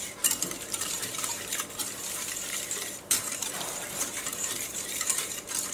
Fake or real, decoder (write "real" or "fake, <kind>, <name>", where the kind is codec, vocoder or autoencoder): fake, vocoder, BigVGAN v2